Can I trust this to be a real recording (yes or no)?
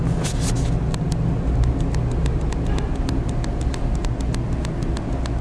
yes